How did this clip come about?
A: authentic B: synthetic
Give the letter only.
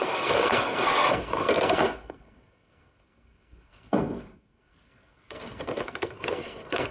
B